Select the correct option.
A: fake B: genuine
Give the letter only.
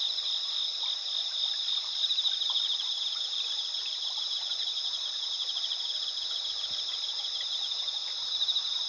B